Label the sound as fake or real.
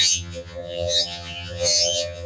fake